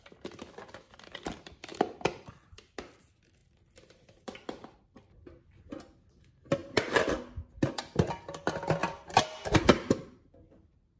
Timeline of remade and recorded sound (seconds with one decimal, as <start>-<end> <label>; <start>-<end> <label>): 0.0-1.7 recorded; 1.7-2.3 remade; 2.3-3.4 recorded; 3.4-5.6 remade; 5.6-8.8 recorded; 8.8-9.8 remade; 9.8-11.0 recorded